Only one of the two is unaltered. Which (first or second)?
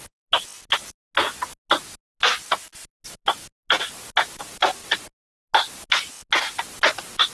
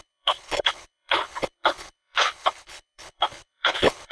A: first